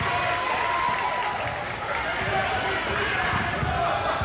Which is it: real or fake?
real